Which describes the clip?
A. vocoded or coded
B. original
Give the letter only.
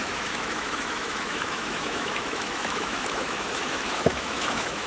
A